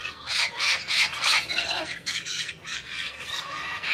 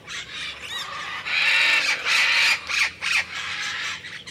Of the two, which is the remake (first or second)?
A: first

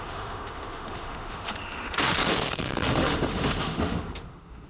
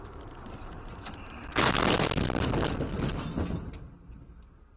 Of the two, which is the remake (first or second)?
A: first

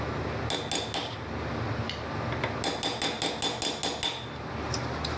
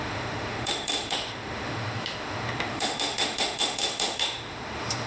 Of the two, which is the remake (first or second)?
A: second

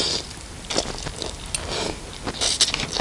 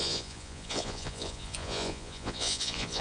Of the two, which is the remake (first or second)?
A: second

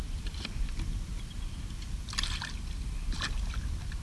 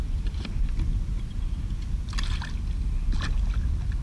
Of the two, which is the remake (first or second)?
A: first